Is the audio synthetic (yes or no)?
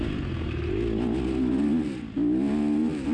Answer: no